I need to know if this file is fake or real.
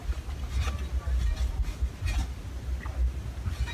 real